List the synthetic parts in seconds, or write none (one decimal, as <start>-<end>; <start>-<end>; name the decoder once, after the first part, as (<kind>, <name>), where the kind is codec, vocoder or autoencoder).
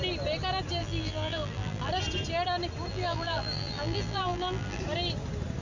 0.8-1.9 (vocoder, BigVGAN v2); 2.9-4.8